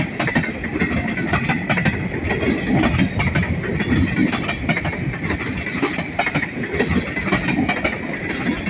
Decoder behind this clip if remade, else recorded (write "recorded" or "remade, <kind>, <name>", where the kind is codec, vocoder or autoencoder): recorded